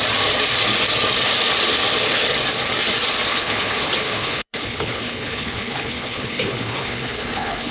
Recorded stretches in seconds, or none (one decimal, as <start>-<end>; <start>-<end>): 0.0-3.3